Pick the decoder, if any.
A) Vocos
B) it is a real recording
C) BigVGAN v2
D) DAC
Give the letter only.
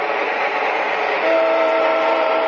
C